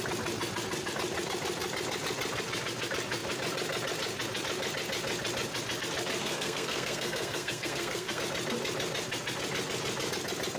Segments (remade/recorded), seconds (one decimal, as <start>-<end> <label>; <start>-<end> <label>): 0.0-6.2 recorded; 6.2-8.2 remade; 8.2-10.6 recorded